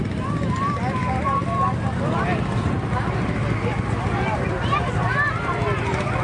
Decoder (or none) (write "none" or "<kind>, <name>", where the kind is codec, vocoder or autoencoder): vocoder, BigVGAN v2